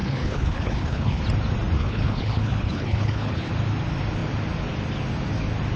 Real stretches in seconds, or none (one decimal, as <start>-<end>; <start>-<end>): 1.2-1.8; 3.5-5.8